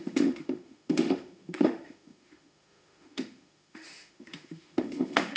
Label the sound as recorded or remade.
remade